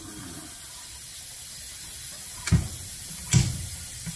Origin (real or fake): real